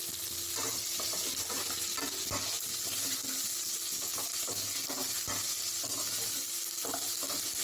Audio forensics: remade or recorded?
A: recorded